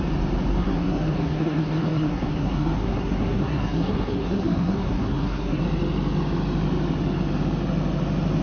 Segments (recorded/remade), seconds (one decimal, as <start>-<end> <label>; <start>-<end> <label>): 0.0-0.6 recorded; 0.6-5.6 remade; 5.6-8.4 recorded